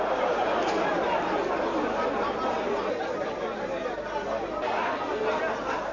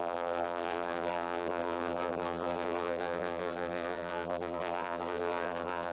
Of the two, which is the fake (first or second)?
second